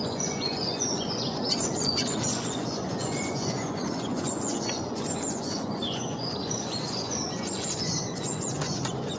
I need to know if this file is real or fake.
fake